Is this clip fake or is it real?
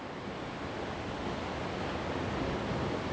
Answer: real